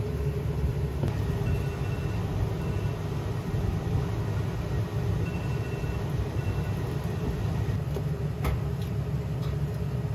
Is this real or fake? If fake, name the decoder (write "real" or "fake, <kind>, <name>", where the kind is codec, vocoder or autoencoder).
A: real